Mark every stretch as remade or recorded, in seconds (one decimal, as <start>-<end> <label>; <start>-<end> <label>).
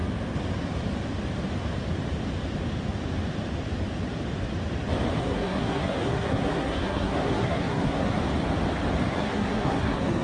0.0-5.2 recorded; 5.2-8.2 remade; 8.2-9.0 recorded; 9.0-10.2 remade